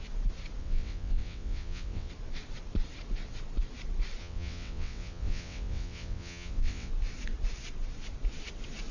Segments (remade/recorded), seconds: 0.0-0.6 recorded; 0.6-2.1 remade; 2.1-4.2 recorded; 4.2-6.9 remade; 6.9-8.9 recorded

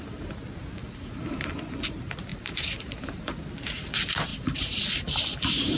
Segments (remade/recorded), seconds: 0.0-0.8 recorded; 0.8-1.5 remade; 1.5-2.3 recorded; 2.3-3.4 remade; 3.4-4.3 recorded; 4.3-5.8 remade

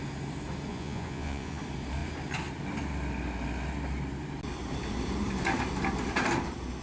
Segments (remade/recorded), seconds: 0.0-0.7 recorded; 0.7-1.6 remade; 1.6-6.8 recorded

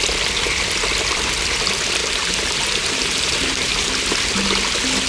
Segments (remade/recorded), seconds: 0.0-2.0 recorded; 2.0-3.9 remade; 3.9-5.1 recorded

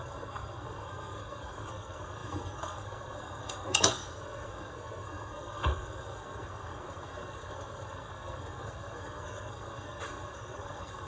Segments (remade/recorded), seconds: 0.0-11.1 remade

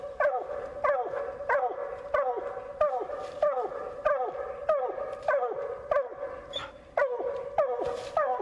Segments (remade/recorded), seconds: 0.0-8.4 recorded

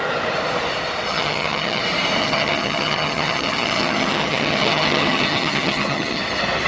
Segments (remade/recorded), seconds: 0.0-1.1 recorded; 1.1-1.8 remade; 1.8-2.2 recorded; 2.2-6.2 remade; 6.2-6.7 recorded

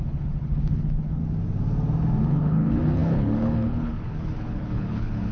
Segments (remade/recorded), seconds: 0.0-1.2 remade; 1.2-2.2 recorded; 2.2-5.3 remade